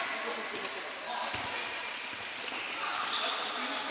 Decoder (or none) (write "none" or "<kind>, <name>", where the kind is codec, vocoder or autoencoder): none